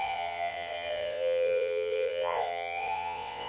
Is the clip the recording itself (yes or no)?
no